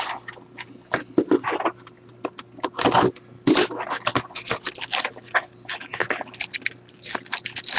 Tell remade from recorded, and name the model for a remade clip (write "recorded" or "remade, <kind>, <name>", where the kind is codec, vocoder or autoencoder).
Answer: recorded